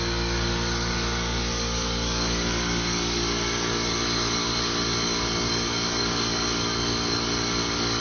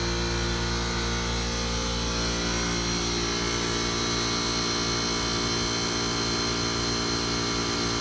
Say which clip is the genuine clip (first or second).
second